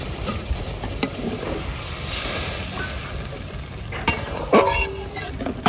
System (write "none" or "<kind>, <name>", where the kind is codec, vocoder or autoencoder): none